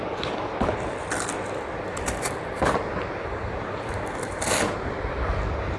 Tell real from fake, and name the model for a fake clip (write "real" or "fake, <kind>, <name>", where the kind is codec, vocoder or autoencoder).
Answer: fake, vocoder, BigVGAN v2